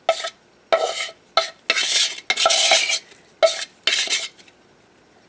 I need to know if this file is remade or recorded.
recorded